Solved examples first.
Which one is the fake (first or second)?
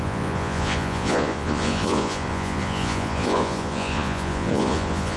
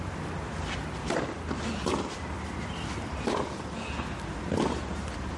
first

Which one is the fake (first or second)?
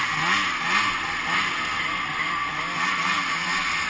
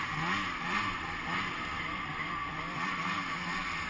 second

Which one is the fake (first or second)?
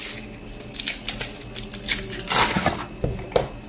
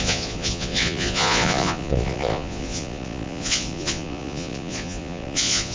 second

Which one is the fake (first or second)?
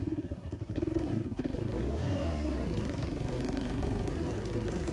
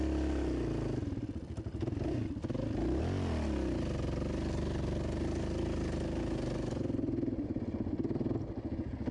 first